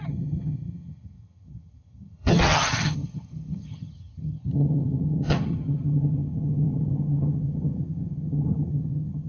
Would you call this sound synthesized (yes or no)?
yes